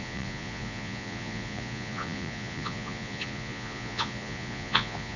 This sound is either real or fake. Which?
fake